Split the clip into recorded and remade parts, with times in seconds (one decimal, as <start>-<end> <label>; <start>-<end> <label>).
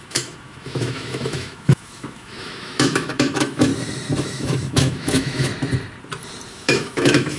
0.0-3.7 remade; 3.7-4.2 recorded; 4.2-5.5 remade; 5.5-6.5 recorded; 6.5-7.4 remade